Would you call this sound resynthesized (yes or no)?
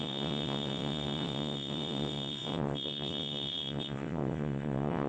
yes